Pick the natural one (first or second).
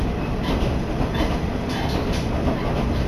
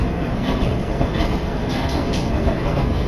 first